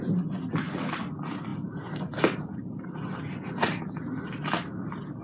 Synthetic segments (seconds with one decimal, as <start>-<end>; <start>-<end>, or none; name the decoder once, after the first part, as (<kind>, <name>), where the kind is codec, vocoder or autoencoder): none